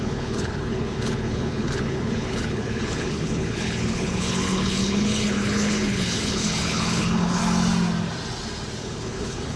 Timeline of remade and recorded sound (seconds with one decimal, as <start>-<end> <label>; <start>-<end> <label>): 0.0-7.4 remade; 7.4-8.8 recorded; 8.8-9.6 remade